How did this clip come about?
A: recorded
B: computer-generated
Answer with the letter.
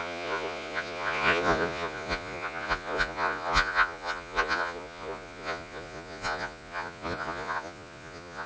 B